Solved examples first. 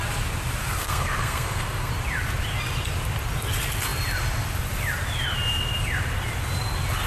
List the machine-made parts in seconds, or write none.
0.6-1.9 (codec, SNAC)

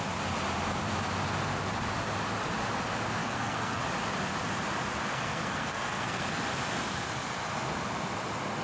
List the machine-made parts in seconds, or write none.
3.2-3.8 (codec, SNAC); 5.1-6.4

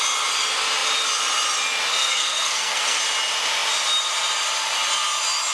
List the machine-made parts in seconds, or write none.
1.9-3.0 (codec, SNAC)

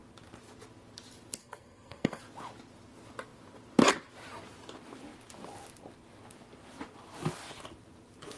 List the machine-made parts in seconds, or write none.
1.4-2.2 (codec, SNAC)

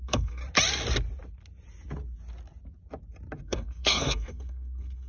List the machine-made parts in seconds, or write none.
0.0-0.4 (codec, SNAC); 3.4-5.1

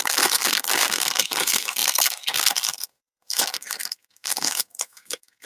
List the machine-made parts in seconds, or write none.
0.0-5.5 (codec, SNAC)

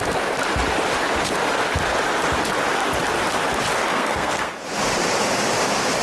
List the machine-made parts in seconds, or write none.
3.9-4.5 (codec, SNAC)